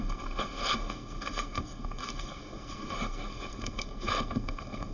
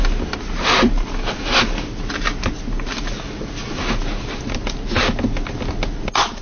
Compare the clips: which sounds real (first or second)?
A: second